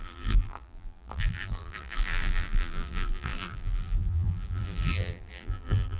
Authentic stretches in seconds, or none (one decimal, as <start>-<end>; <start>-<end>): none